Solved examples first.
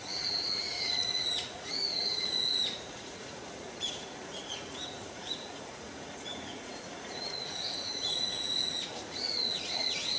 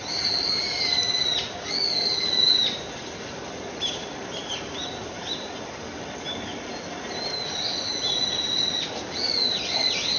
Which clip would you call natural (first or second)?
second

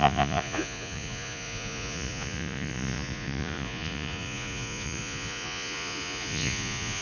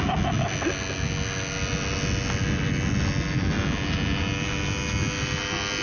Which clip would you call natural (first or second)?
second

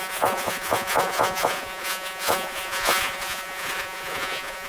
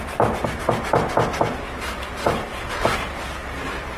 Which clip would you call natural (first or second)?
second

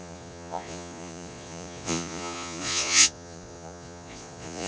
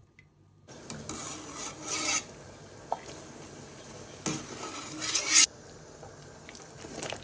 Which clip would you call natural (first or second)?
second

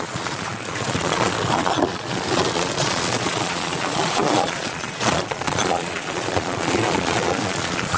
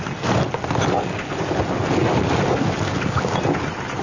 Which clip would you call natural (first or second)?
second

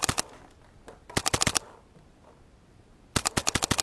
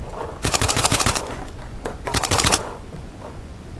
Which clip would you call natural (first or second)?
first